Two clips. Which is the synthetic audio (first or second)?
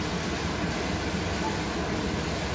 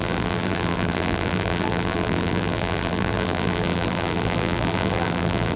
second